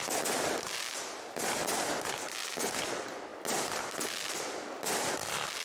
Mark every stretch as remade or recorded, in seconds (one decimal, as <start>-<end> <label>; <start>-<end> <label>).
0.0-5.6 recorded